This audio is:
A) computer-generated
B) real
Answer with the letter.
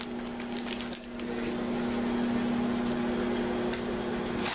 B